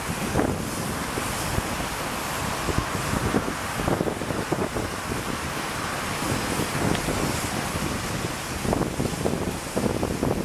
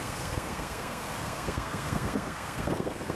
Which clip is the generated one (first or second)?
second